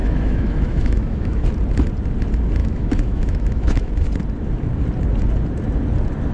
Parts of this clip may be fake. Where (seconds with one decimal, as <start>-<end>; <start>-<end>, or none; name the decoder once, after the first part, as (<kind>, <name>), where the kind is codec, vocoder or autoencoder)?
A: 0.0-1.4 (autoencoder, DAC-VAE); 2.6-3.9